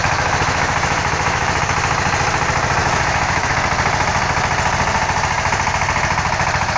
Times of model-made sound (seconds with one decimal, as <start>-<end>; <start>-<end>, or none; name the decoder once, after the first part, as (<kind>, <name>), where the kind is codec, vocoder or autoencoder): 0.0-1.6 (autoencoder, DAC-VAE); 2.8-3.5